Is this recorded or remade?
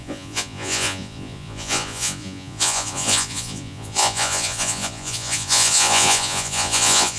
remade